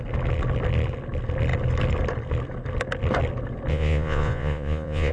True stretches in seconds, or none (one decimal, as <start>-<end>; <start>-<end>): 0.0-3.7